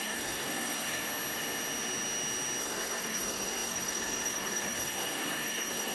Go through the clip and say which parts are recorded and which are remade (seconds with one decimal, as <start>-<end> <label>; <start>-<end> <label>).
0.0-1.0 remade; 1.0-2.6 recorded; 2.6-5.9 remade